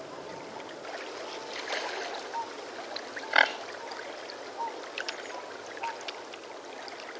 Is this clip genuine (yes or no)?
yes